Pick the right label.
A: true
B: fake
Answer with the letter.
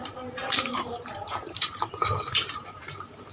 B